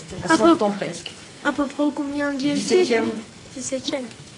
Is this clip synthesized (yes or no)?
yes